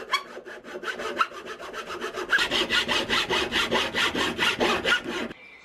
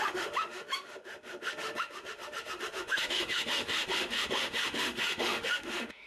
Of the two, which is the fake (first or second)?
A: second